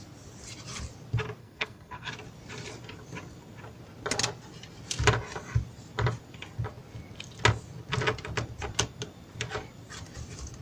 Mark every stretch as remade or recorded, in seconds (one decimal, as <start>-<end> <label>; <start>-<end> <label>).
0.0-1.4 recorded; 1.4-2.1 remade; 2.1-10.6 recorded